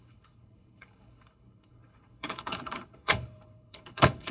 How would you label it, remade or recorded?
remade